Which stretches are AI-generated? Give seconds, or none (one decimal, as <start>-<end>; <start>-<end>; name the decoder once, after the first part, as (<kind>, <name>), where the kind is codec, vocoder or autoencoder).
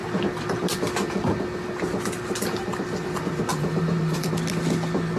3.5-4.3 (vocoder, BigVGAN v2)